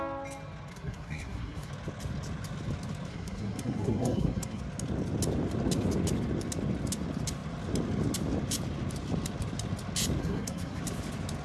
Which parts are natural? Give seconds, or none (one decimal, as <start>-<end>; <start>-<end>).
0.0-0.7; 1.7-3.1; 4.6-10.2; 10.8-11.4